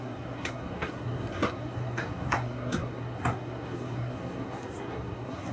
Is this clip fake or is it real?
fake